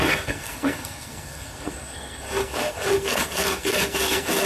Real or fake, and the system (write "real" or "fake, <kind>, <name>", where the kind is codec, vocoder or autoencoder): fake, codec, SNAC